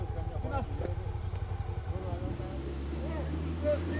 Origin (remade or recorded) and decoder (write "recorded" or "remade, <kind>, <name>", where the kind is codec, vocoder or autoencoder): recorded